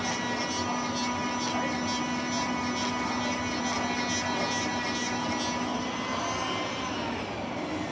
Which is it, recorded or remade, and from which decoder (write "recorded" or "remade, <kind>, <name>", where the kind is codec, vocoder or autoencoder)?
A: recorded